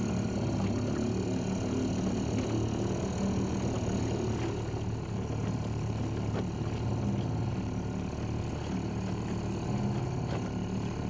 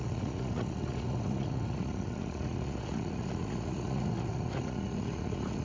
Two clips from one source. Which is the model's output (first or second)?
second